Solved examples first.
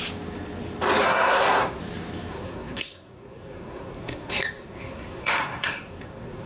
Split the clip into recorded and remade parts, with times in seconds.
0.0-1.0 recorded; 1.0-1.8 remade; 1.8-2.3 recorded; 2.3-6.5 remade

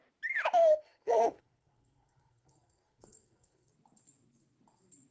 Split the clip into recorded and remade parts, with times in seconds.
0.0-0.6 recorded; 0.6-3.7 remade; 3.7-5.1 recorded